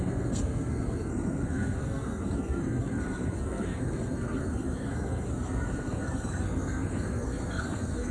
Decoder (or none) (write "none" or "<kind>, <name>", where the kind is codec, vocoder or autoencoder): codec, SNAC